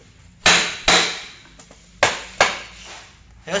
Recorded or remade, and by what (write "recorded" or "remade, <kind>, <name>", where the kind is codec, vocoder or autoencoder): recorded